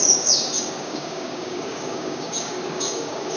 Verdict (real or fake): fake